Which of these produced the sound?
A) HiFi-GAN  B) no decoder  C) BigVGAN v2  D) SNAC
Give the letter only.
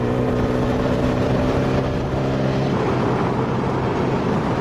C